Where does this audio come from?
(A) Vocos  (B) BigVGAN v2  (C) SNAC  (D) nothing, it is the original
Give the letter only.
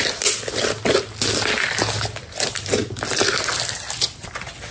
D